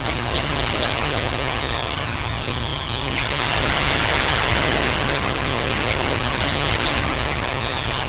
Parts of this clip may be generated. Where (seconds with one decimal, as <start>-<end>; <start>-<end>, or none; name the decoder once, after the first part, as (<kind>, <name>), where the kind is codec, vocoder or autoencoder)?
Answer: 0.0-8.1 (vocoder, HiFi-GAN)